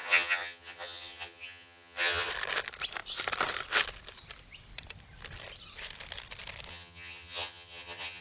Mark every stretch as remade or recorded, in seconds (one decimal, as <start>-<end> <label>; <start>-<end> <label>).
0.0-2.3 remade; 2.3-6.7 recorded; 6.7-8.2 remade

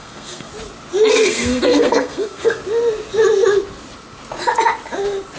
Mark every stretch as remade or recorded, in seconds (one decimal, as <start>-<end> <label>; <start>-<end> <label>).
0.0-0.5 remade; 0.5-1.1 recorded; 1.1-2.6 remade; 2.6-5.4 recorded

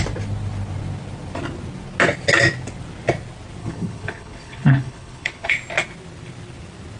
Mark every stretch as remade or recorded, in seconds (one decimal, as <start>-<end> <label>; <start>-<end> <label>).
0.0-3.6 recorded; 3.6-5.5 remade; 5.5-7.0 recorded

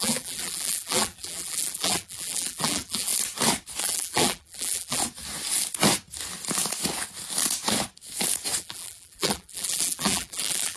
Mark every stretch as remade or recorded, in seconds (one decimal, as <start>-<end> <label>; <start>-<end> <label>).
0.0-3.1 remade; 3.1-3.8 recorded; 3.8-5.0 remade; 5.0-8.6 recorded; 8.6-10.8 remade